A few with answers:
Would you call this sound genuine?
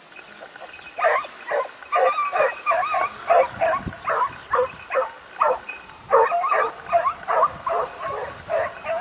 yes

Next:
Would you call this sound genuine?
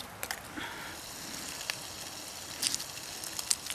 yes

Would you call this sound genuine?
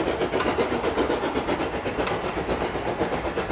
yes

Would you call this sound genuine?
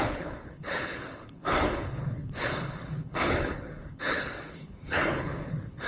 no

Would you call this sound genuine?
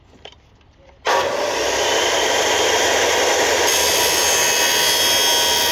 yes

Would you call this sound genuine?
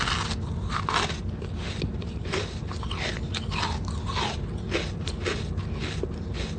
yes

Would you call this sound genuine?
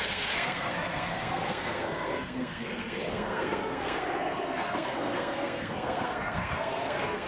no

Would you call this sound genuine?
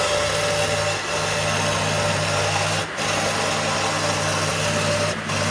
yes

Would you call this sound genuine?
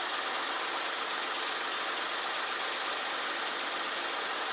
yes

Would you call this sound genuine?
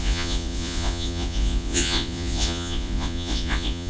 no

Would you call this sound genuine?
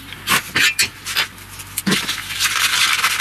yes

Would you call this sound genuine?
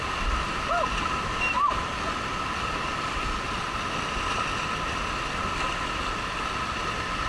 yes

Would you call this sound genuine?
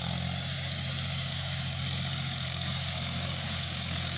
no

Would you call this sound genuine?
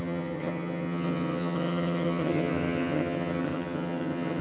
no